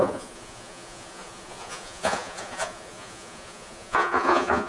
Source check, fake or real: fake